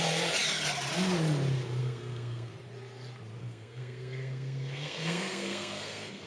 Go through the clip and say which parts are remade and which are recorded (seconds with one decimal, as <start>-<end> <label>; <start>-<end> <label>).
0.0-1.8 recorded; 1.8-2.5 remade; 2.5-3.4 recorded; 3.4-6.3 remade